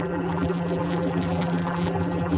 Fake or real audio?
fake